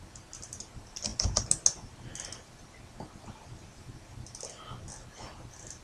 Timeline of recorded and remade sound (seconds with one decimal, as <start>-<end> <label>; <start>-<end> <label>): 0.0-5.8 recorded